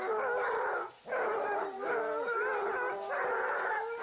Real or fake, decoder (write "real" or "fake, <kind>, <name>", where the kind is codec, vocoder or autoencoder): real